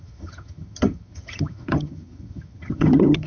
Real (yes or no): no